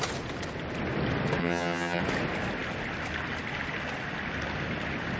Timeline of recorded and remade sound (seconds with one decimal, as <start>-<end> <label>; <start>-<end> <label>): 0.0-1.4 recorded; 1.4-2.0 remade; 2.0-5.2 recorded